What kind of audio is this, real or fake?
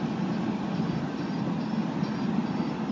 real